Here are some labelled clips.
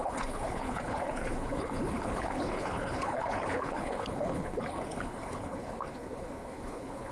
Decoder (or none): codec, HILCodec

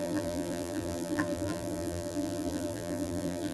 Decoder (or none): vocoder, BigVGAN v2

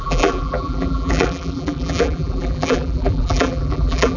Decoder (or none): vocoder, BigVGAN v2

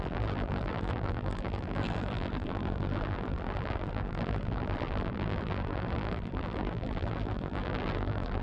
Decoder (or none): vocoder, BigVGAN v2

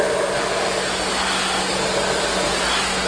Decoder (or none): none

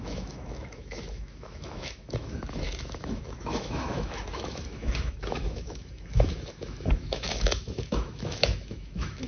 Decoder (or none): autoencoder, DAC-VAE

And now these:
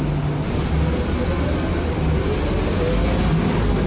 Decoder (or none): none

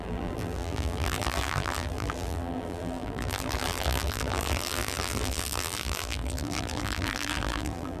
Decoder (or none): vocoder, BigVGAN v2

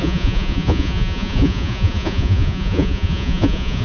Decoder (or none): vocoder, Vocos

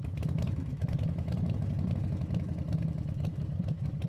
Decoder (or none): autoencoder, DAC-VAE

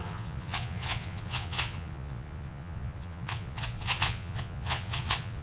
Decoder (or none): vocoder, Vocos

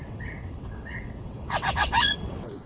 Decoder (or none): vocoder, WaveNeXt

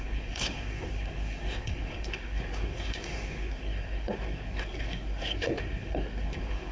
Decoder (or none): codec, SNAC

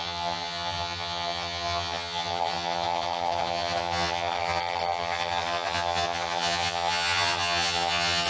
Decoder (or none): vocoder, HiFi-GAN